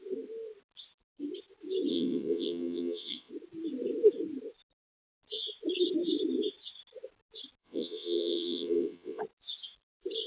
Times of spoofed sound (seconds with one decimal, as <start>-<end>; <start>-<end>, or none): 1.9-3.3; 7.6-9.2